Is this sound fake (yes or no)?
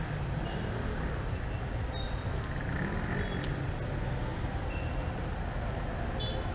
no